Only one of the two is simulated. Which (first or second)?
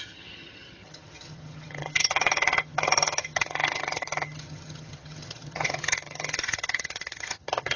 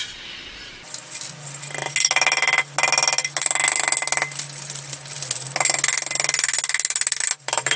first